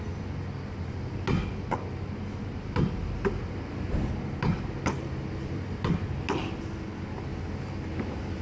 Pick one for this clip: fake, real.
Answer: real